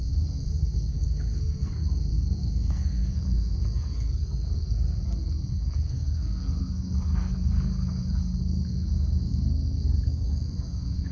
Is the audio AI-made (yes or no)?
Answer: yes